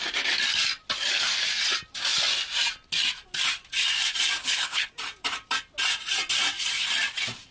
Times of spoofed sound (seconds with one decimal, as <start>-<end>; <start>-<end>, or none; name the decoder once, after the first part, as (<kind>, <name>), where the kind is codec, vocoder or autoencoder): 4.4-4.9 (codec, HILCodec)